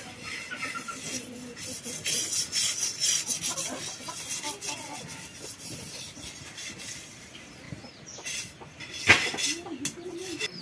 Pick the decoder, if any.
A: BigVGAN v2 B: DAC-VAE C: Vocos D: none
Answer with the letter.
D